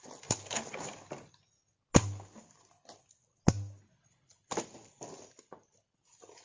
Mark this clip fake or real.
real